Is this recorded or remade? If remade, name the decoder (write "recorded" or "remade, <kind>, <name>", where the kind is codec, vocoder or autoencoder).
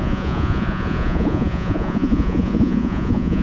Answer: remade, vocoder, Vocos